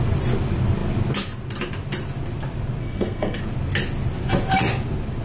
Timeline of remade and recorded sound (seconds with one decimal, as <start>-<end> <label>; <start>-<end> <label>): 0.0-2.8 recorded; 2.8-3.4 remade; 3.4-5.2 recorded